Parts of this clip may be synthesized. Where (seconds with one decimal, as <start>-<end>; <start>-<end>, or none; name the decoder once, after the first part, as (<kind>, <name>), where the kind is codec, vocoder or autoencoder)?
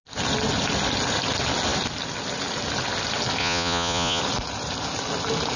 3.4-4.2 (vocoder, Vocos)